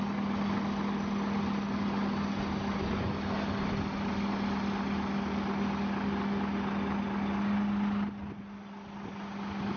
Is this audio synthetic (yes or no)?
no